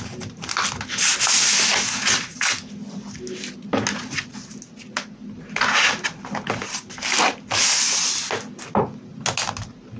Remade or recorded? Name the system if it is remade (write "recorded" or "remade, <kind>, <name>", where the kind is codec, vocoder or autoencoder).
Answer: recorded